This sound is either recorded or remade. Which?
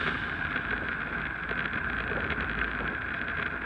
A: recorded